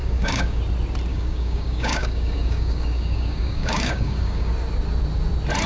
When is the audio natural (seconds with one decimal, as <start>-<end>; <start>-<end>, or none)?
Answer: 0.6-1.1; 4.5-5.7